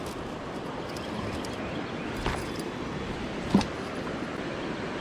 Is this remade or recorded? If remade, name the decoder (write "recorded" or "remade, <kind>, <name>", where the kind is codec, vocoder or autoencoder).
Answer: recorded